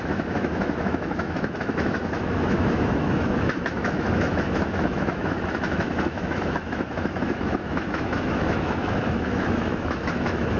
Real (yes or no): no